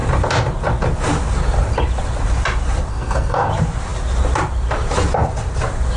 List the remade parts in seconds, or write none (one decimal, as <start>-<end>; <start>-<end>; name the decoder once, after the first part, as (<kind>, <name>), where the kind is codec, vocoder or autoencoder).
2.9-3.5 (codec, SNAC)